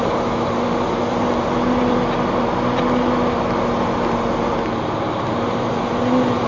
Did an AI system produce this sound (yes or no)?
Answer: no